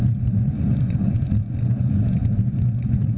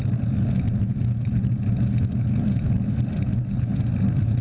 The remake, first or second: first